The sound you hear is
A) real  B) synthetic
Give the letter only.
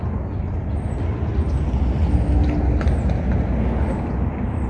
A